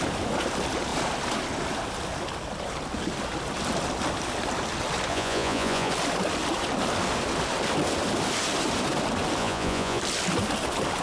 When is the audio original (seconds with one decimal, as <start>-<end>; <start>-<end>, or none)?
0.0-5.1; 5.9-9.4; 10.0-11.0